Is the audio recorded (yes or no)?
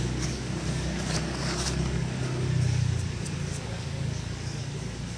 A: no